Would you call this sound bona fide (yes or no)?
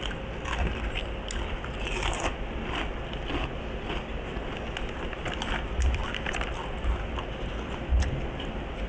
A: yes